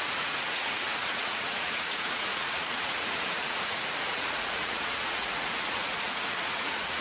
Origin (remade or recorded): remade